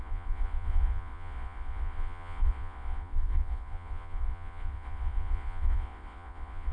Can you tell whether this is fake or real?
fake